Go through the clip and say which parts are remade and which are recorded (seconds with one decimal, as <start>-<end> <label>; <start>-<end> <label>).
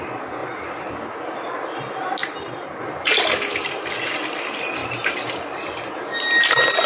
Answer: 0.0-0.4 recorded; 0.4-0.9 remade; 0.9-4.8 recorded; 4.8-5.8 remade; 5.8-6.9 recorded